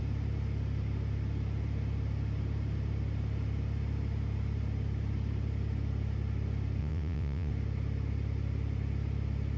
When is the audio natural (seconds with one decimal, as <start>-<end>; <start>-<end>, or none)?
0.0-6.8; 7.5-9.6